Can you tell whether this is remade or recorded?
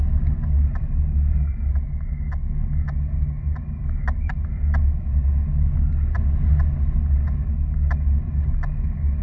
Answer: recorded